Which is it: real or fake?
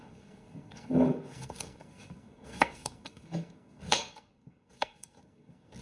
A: fake